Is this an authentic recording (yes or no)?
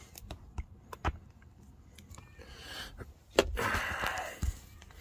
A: yes